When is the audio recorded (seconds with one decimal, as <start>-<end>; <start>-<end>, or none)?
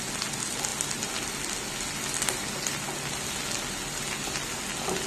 0.0-5.1